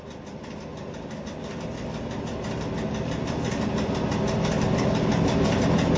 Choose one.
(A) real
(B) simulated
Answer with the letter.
A